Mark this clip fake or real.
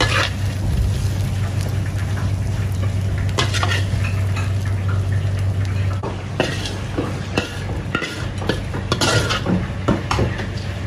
real